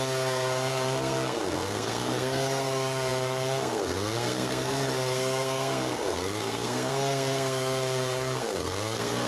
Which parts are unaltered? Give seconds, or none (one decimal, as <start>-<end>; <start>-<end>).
none